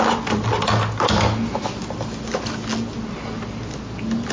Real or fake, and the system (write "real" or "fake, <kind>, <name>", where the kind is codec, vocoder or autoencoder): real